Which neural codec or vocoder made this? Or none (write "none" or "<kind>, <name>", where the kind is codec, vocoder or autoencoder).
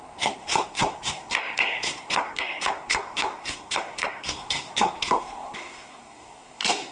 codec, SNAC